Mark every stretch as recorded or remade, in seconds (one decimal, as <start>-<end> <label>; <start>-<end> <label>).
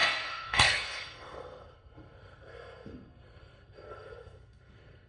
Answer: 0.0-5.1 remade